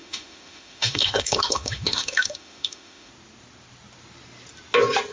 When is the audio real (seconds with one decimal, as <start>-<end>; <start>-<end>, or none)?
3.1-5.1